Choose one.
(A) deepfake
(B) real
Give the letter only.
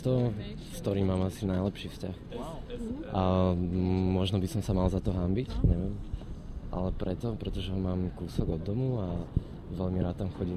B